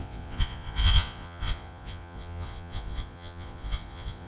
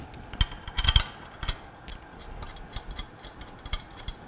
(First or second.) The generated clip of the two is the first